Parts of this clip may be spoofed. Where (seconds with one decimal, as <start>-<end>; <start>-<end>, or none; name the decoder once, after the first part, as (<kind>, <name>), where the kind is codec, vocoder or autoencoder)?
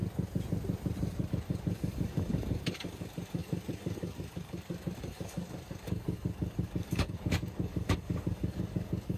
1.3-9.2 (codec, DAC)